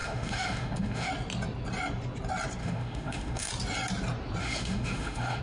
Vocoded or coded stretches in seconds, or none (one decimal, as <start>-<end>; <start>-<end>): 0.0-1.1; 2.6-3.5; 4.4-5.4